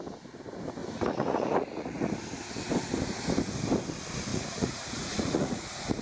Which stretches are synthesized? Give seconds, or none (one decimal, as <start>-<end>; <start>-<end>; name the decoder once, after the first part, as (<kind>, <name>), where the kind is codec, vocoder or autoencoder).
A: 0.8-2.1 (vocoder, Vocos); 4.3-6.0